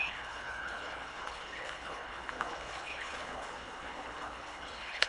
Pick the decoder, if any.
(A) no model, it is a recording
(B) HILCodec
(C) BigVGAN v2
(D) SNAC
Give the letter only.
B